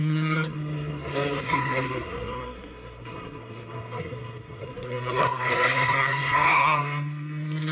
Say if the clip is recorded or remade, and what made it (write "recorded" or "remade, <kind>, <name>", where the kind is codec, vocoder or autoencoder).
remade, codec, SNAC